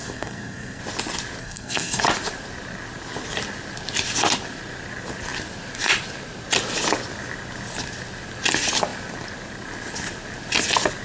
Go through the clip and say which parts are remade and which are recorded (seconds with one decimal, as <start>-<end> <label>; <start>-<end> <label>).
0.0-0.8 remade; 0.8-1.4 recorded; 1.4-2.0 remade; 2.0-11.0 recorded